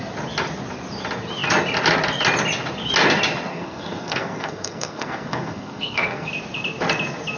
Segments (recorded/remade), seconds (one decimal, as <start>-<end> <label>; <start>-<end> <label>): 0.0-3.5 recorded; 3.5-6.3 remade; 6.3-7.4 recorded